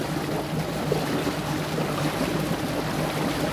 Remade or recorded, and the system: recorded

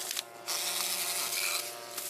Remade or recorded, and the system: recorded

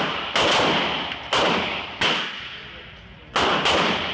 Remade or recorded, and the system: recorded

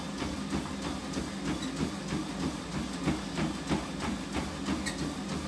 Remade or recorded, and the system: recorded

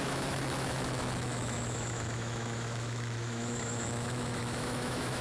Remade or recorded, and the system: remade, autoencoder, DAC-VAE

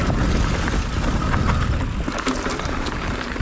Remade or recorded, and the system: recorded